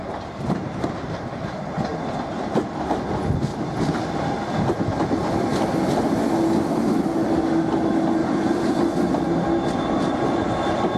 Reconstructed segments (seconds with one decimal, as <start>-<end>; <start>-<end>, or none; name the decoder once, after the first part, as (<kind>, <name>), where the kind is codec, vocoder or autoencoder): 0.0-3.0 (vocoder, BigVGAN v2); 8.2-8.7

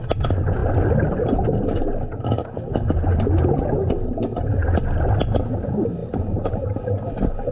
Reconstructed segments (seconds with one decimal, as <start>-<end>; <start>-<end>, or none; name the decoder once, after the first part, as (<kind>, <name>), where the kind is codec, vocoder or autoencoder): none

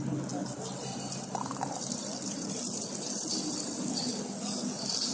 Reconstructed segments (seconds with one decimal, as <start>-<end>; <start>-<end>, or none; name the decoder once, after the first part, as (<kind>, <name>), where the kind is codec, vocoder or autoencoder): 0.4-3.5 (vocoder, BigVGAN v2)

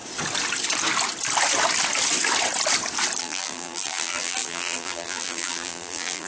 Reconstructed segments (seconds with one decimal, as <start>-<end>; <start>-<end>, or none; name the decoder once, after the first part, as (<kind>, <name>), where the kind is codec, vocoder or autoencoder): 3.2-6.3 (vocoder, BigVGAN v2)